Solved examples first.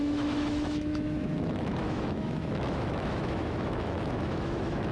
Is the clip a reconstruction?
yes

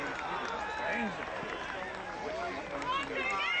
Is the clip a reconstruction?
no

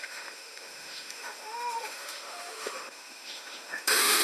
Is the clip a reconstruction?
yes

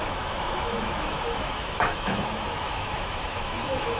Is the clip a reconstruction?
yes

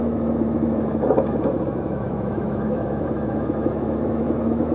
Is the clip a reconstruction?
yes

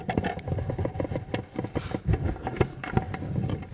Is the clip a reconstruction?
no